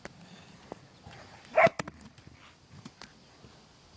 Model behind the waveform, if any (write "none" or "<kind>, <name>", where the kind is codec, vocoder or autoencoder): none